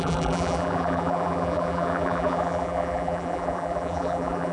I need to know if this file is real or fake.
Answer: fake